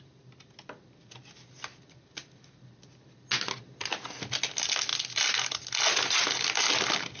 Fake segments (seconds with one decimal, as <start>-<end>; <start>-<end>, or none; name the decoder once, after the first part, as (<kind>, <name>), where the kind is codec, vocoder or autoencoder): none